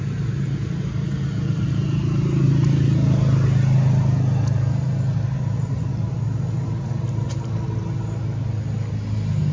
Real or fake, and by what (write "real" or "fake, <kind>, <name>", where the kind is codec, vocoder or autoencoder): real